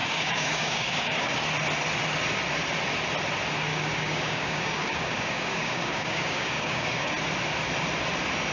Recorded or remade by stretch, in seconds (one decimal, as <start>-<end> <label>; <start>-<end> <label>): 0.0-1.4 remade; 1.4-3.7 recorded; 3.7-7.1 remade; 7.1-8.5 recorded